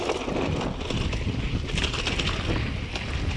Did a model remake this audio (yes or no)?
no